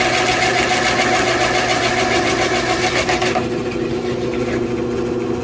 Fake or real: real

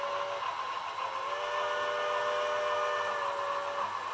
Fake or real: real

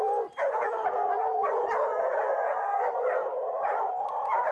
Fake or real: real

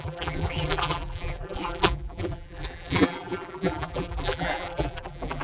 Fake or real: fake